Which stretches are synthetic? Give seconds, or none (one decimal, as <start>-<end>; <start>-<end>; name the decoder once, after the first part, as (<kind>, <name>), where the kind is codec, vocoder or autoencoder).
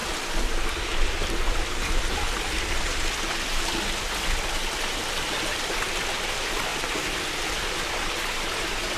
0.0-1.3 (vocoder, BigVGAN v2)